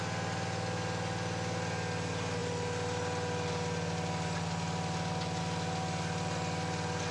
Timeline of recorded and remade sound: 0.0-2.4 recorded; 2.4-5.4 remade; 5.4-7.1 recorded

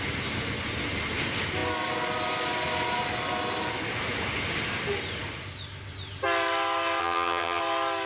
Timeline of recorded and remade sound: 0.0-7.0 recorded; 7.0-7.6 remade; 7.6-8.1 recorded

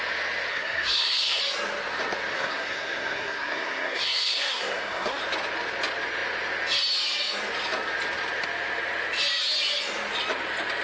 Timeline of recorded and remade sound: 0.0-0.5 recorded; 0.5-1.4 remade; 1.4-2.3 recorded; 2.3-5.2 remade; 5.2-10.8 recorded

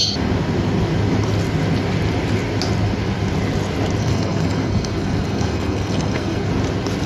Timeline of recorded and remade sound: 0.0-4.0 recorded; 4.0-6.5 remade; 6.5-7.1 recorded